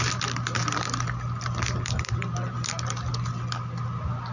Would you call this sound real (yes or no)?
yes